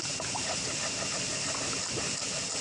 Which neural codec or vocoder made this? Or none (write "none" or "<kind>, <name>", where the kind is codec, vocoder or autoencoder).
none